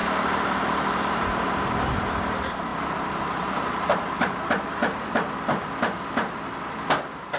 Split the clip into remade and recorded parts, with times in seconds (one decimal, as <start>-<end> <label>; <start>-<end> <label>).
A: 0.0-1.5 remade; 1.5-2.7 recorded; 2.7-4.4 remade; 4.4-7.4 recorded

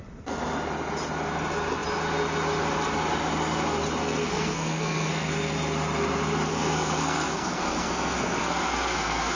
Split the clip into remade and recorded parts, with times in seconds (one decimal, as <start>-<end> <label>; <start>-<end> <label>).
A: 0.0-4.0 recorded; 4.0-5.3 remade; 5.3-6.5 recorded; 6.5-9.4 remade

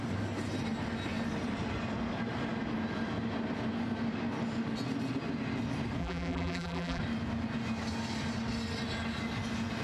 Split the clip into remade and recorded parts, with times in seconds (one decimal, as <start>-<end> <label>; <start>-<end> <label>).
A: 0.0-6.0 recorded; 6.0-7.0 remade; 7.0-9.8 recorded

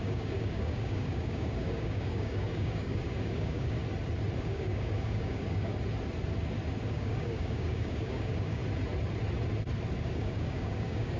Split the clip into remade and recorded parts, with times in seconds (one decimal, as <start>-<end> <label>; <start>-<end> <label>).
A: 0.0-3.8 remade; 3.8-4.4 recorded; 4.4-5.7 remade; 5.7-6.9 recorded; 6.9-8.6 remade; 8.6-10.0 recorded; 10.0-11.2 remade

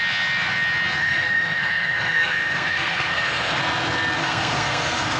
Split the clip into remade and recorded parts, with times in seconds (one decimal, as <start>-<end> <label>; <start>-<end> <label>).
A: 0.0-1.0 recorded; 1.0-3.6 remade; 3.6-4.2 recorded; 4.2-5.2 remade

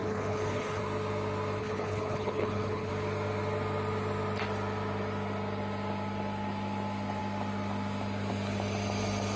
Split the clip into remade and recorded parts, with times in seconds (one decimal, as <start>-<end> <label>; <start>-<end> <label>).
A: 0.0-0.8 remade; 0.8-1.6 recorded; 1.6-2.9 remade; 2.9-9.4 recorded

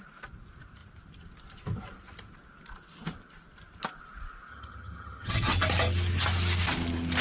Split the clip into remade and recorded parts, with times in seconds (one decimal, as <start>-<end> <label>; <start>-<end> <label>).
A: 0.0-4.5 recorded; 4.5-5.5 remade; 5.5-7.2 recorded

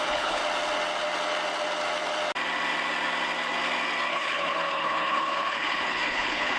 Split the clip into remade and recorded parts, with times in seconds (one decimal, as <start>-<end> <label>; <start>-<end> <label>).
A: 0.0-0.4 remade; 0.4-4.1 recorded; 4.1-6.6 remade